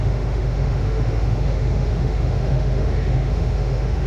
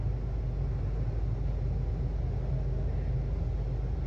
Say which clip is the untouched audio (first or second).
second